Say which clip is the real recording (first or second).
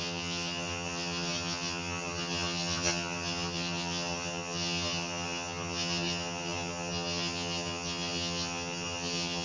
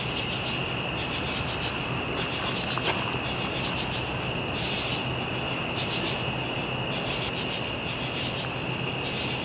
second